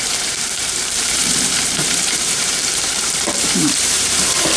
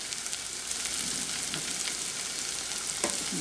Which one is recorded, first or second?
second